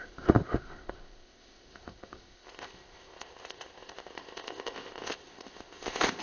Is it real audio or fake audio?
fake